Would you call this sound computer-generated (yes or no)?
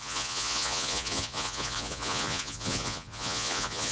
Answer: yes